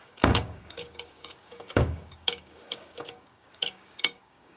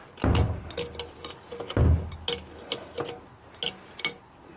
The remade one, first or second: first